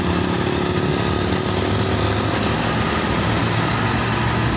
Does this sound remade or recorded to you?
recorded